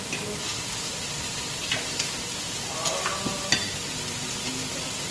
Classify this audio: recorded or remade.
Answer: recorded